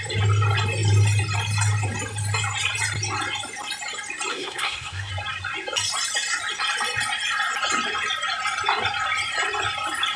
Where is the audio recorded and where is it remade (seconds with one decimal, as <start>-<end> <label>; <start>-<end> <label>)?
0.0-4.3 recorded; 4.3-5.1 remade; 5.1-10.2 recorded